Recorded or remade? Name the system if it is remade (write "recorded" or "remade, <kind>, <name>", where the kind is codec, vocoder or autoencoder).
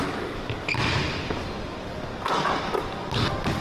remade, vocoder, BigVGAN v2